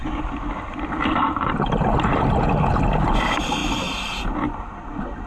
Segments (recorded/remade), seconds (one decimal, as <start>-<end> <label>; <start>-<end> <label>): 0.0-3.6 recorded; 3.6-4.2 remade; 4.2-5.3 recorded